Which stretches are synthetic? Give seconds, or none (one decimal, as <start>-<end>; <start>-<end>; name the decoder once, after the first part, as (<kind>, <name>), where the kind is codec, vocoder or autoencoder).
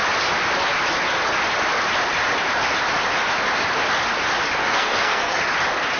4.6-5.4 (codec, SNAC)